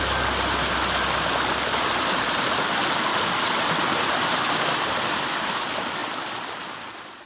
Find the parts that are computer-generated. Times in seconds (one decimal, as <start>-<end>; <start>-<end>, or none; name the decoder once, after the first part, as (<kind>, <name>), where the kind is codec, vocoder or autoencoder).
none